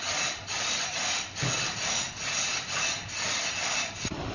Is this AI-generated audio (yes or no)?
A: no